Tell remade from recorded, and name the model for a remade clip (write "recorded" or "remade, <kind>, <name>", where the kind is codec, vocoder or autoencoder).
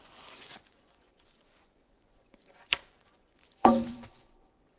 remade, vocoder, Vocos